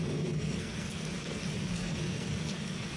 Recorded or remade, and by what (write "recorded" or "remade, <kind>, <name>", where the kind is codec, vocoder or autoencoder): remade, codec, SNAC